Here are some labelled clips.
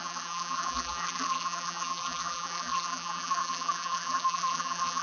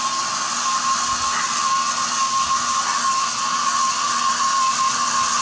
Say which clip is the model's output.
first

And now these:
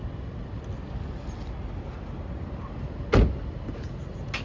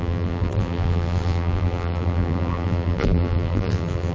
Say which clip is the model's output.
second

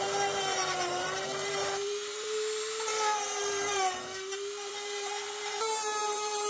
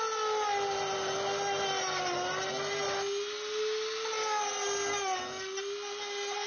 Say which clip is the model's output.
first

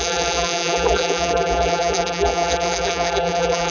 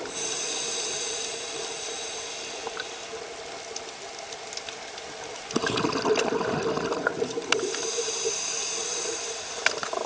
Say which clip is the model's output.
first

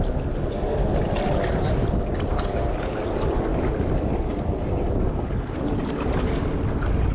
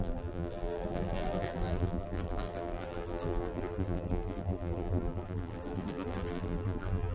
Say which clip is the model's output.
second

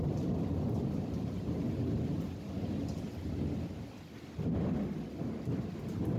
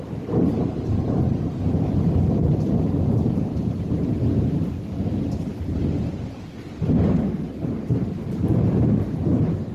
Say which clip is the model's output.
second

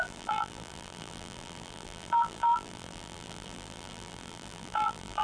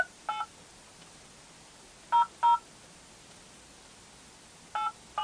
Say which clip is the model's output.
first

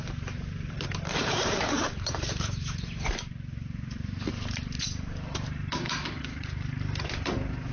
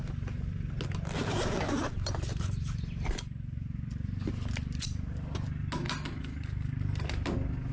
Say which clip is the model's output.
first